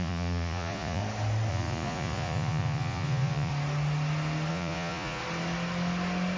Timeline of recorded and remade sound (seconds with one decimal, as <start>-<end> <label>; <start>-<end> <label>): 0.0-1.0 remade; 1.0-1.5 recorded; 1.5-3.5 remade; 3.5-4.5 recorded; 4.5-5.2 remade; 5.2-6.4 recorded